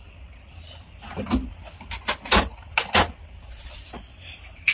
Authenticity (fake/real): real